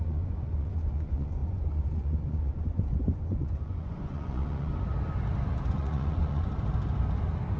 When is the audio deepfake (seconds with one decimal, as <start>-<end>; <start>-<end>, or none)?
0.0-4.7; 5.7-6.5

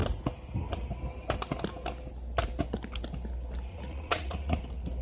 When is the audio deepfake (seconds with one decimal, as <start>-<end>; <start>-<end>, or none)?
3.7-4.6

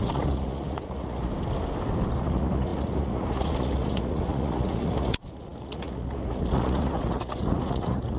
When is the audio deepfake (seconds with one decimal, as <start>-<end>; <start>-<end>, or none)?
0.0-1.3; 2.2-8.2